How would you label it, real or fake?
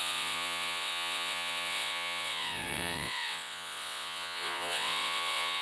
fake